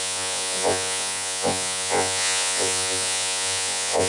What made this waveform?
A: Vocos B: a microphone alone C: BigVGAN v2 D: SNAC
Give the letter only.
A